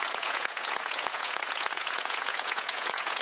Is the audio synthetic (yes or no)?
yes